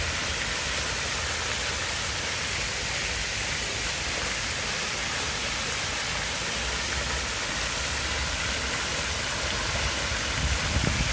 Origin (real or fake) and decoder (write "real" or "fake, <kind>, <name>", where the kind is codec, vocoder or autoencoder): real